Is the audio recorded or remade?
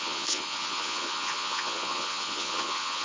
remade